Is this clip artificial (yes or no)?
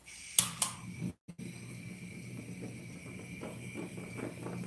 no